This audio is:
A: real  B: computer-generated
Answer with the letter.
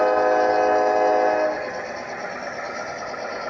A